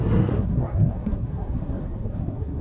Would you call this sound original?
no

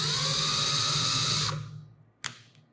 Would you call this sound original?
yes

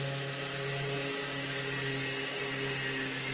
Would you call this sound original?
yes